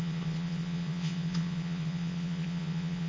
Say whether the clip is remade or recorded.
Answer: remade